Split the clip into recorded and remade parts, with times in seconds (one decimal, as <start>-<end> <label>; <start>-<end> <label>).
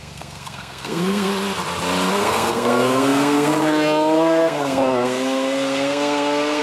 0.0-1.3 remade; 1.3-2.1 recorded; 2.1-6.6 remade